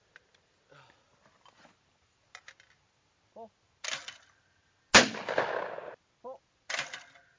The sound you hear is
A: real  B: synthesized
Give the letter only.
A